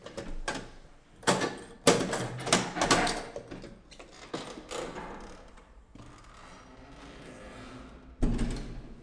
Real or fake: real